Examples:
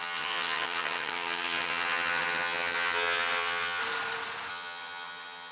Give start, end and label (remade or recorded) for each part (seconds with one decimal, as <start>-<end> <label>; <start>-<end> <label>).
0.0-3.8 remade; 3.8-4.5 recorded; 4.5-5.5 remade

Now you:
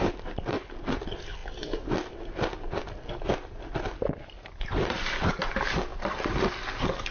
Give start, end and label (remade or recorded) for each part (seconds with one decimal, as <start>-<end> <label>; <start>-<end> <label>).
0.0-7.1 recorded

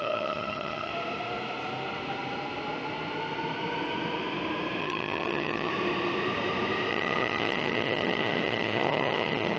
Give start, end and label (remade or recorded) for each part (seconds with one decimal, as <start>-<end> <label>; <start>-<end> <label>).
0.0-0.9 remade; 0.9-4.8 recorded; 4.8-5.7 remade; 5.7-6.9 recorded; 6.9-9.6 remade